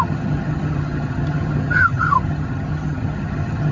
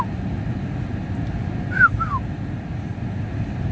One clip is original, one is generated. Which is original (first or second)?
second